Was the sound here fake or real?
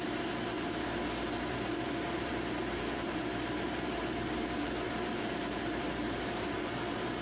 fake